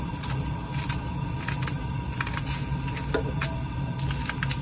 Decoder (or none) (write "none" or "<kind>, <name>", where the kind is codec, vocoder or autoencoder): none